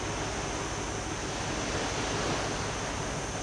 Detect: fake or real real